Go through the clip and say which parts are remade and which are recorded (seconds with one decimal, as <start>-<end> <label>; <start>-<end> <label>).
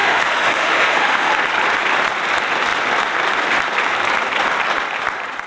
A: 0.0-1.3 remade; 1.3-5.5 recorded